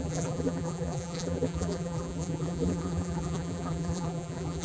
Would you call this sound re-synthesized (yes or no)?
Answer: yes